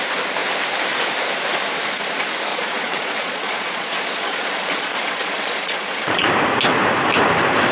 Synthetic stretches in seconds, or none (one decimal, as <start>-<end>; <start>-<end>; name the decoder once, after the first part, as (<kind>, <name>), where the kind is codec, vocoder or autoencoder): 2.5-6.3 (vocoder, Vocos)